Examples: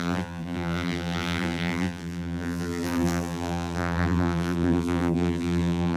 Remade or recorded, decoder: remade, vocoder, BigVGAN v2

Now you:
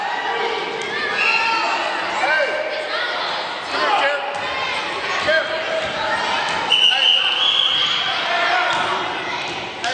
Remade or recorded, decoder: recorded